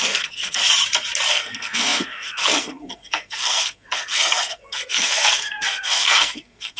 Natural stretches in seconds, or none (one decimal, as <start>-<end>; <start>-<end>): 0.6-1.3